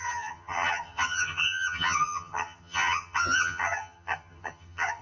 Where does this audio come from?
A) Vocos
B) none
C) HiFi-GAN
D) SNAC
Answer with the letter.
C